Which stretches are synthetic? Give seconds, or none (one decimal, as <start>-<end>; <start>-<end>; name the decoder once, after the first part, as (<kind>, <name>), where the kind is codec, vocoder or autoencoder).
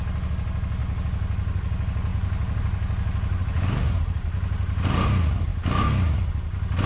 none